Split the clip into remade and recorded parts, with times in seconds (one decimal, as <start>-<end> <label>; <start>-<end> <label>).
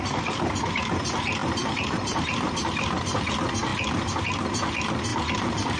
0.0-1.4 recorded; 1.4-3.3 remade; 3.3-5.1 recorded; 5.1-5.8 remade